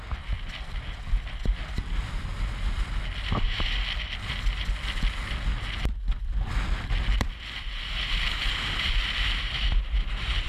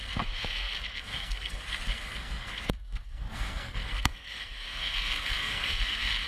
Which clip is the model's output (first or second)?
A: second